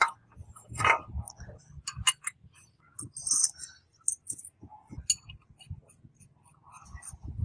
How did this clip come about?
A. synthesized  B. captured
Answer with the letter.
B